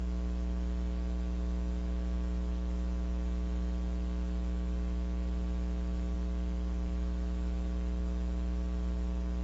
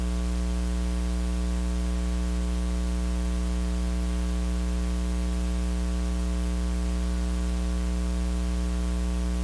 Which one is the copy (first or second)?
first